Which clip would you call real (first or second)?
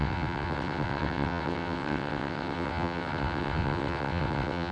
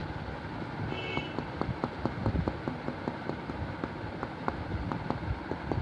second